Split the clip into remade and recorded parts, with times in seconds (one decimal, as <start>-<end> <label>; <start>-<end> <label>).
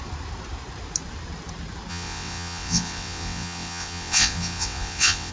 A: 0.0-1.9 recorded; 1.9-5.3 remade